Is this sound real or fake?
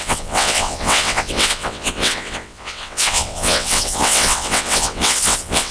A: fake